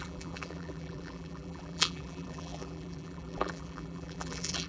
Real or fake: fake